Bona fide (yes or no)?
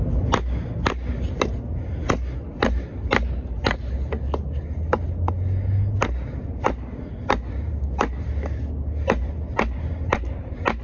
yes